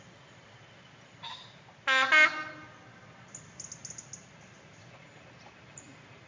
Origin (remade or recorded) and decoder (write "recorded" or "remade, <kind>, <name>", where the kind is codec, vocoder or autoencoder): recorded